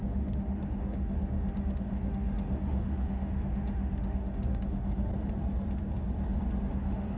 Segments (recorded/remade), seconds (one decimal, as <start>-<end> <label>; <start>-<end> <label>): 0.0-5.1 remade; 5.1-6.6 recorded; 6.6-7.2 remade